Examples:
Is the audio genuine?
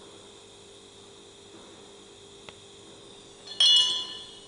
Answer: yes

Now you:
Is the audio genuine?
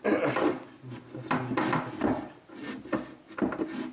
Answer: yes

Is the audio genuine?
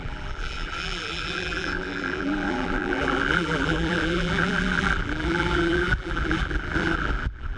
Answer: no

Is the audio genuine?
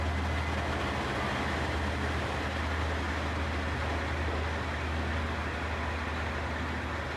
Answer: yes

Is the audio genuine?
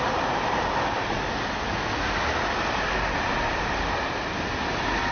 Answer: yes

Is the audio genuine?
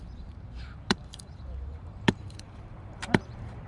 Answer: no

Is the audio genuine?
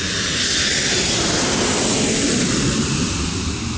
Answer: no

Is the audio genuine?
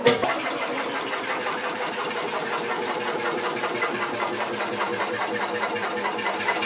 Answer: no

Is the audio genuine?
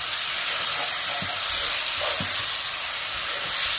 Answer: yes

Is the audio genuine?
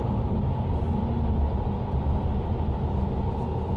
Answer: yes